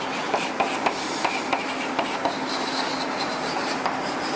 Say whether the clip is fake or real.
real